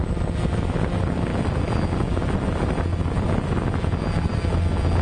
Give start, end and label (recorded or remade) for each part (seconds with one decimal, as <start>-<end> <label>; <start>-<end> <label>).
0.0-5.0 recorded